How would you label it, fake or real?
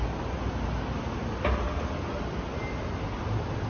real